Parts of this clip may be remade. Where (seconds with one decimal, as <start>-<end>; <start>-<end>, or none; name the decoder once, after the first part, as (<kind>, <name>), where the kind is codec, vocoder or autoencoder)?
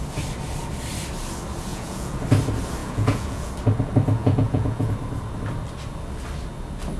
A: 1.7-2.2 (vocoder, Vocos); 2.8-3.5; 4.2-4.9